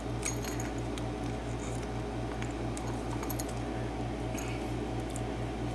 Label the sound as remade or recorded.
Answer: recorded